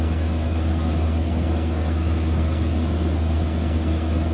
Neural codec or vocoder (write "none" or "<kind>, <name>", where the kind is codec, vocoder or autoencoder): codec, SNAC